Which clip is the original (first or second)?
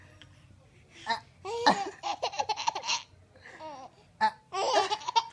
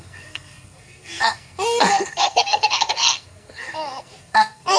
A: first